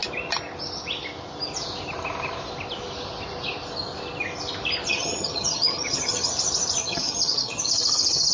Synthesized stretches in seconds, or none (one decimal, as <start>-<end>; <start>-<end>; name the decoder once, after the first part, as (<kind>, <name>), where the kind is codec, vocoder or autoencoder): 4.9-6.3 (vocoder, HiFi-GAN); 6.8-8.3